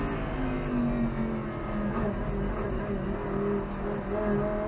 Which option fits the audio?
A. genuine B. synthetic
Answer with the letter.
A